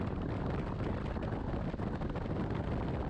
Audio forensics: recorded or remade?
recorded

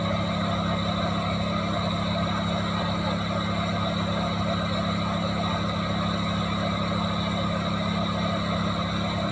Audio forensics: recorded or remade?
recorded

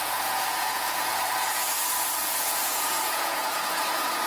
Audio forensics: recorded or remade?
remade